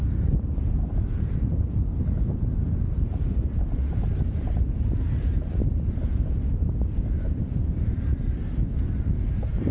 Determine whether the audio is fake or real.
fake